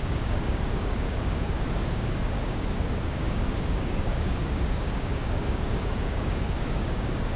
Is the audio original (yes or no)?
no